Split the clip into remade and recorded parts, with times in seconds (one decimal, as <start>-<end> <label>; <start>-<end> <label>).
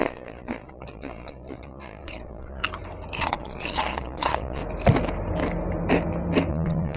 0.0-2.6 remade; 2.6-3.2 recorded; 3.2-4.6 remade; 4.6-6.5 recorded; 6.5-7.0 remade